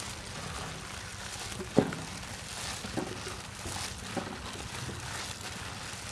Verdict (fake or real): real